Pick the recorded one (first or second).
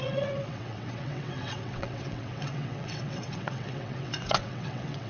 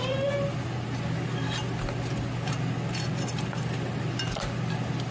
second